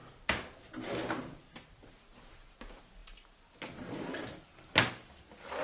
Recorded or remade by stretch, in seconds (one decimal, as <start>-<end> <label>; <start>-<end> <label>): 0.0-5.6 recorded